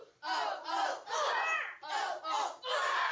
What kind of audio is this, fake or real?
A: real